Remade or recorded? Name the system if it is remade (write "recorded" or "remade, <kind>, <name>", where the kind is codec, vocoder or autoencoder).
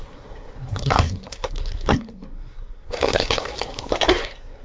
remade, codec, SNAC